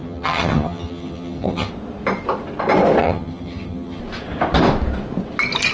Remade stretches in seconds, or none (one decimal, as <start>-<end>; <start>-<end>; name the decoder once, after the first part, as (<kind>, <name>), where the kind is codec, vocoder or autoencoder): 0.0-1.7 (vocoder, HiFi-GAN); 3.0-4.0